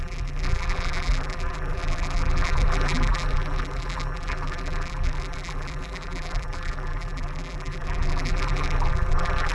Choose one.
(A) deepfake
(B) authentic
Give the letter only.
A